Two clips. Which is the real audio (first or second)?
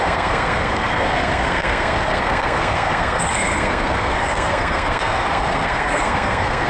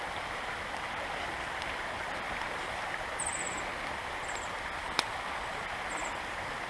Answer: second